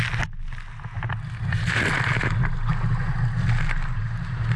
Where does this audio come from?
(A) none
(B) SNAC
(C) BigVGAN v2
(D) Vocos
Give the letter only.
A